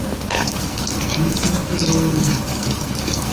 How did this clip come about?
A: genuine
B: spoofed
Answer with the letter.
B